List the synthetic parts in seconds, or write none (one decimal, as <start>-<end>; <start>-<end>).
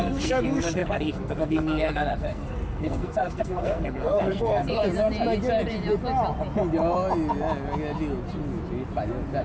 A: 0.0-4.8